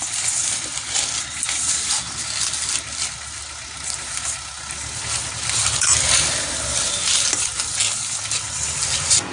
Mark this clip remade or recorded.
recorded